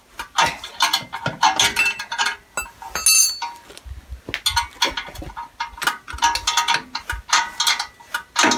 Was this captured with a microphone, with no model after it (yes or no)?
yes